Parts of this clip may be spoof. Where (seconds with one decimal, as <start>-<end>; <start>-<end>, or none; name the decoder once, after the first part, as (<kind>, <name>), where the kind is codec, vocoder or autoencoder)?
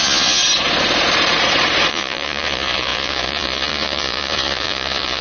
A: 0.0-0.4 (vocoder, Vocos); 1.9-5.2